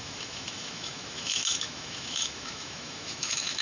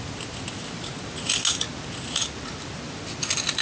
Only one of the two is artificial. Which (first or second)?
first